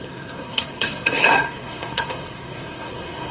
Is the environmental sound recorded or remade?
remade